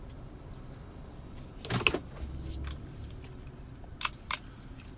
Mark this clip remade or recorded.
recorded